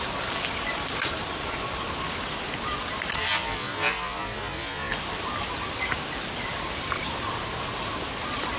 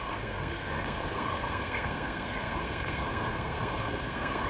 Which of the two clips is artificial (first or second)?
second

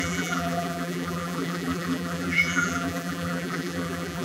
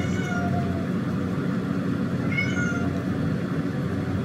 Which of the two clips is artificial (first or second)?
first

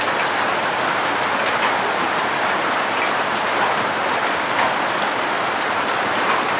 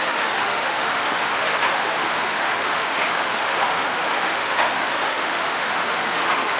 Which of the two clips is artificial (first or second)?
second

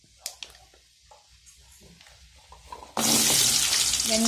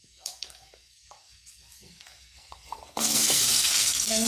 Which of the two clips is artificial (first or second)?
second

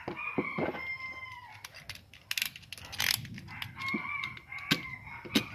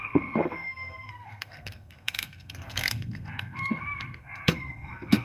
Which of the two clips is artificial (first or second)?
second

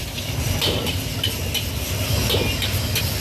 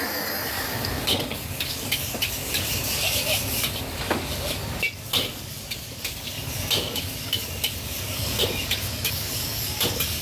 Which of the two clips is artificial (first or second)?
second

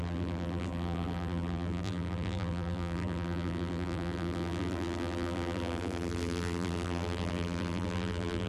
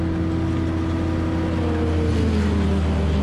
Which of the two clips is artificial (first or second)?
first